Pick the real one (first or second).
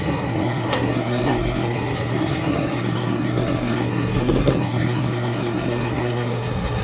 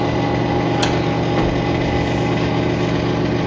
second